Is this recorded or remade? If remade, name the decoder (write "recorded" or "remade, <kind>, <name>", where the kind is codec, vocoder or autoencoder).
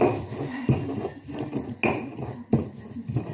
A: recorded